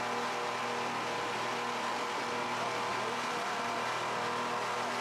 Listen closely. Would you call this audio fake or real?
real